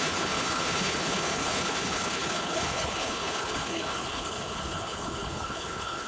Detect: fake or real fake